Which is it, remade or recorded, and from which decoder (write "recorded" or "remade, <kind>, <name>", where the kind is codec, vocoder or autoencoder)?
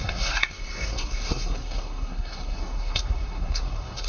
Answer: remade, codec, SNAC